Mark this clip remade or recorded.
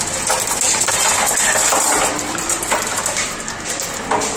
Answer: recorded